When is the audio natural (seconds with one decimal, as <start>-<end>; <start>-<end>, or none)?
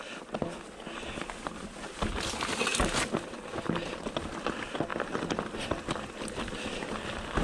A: 0.0-7.4